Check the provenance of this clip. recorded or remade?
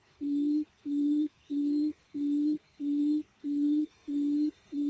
remade